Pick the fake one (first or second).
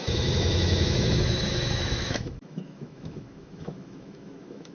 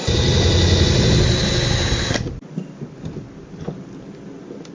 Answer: first